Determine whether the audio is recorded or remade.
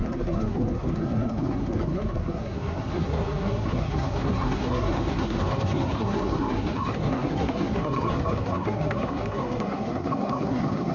remade